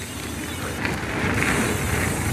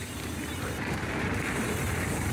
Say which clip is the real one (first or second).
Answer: first